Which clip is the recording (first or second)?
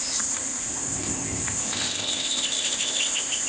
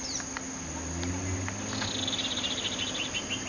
second